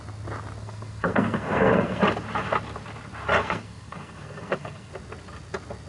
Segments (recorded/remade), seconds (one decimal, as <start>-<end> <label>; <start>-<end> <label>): 0.0-0.6 recorded; 0.6-2.0 remade; 2.0-3.4 recorded; 3.4-4.9 remade; 4.9-5.9 recorded